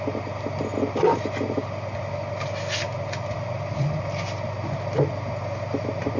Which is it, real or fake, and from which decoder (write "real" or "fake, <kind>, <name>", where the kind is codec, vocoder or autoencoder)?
real